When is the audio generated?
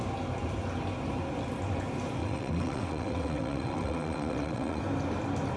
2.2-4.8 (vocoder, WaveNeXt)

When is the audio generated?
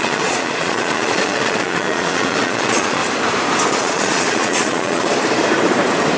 0.0-3.0 (vocoder, Vocos); 3.7-5.1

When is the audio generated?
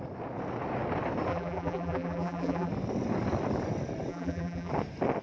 1.3-2.7 (vocoder, BigVGAN v2); 4.1-4.7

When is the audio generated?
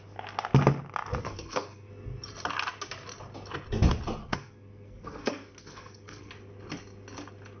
1.2-1.9 (codec, SNAC); 4.2-6.3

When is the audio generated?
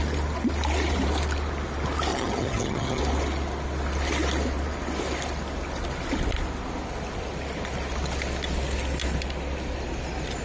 2.1-3.0 (vocoder, HiFi-GAN)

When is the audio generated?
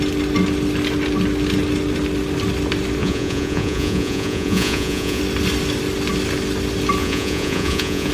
3.0-5.2 (vocoder, Vocos); 7.0-8.1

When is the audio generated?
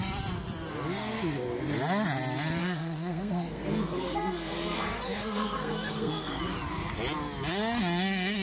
2.6-6.4 (codec, SNAC)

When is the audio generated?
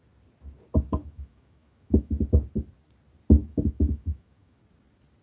1.0-2.1 (autoencoder, DAC-VAE); 3.4-4.6